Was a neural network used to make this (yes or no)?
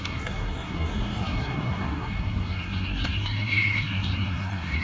yes